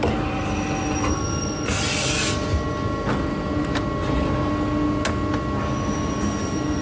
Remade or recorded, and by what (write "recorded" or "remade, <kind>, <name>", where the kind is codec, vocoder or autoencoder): recorded